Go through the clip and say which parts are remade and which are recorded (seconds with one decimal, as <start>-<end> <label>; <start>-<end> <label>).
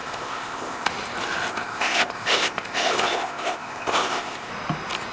0.0-0.9 remade; 0.9-1.5 recorded; 1.5-4.5 remade; 4.5-5.1 recorded